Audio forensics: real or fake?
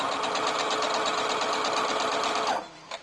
real